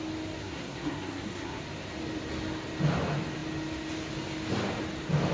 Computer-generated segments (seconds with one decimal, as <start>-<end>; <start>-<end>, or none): 0.4-1.6